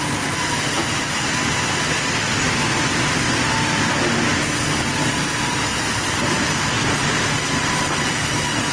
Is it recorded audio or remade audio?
recorded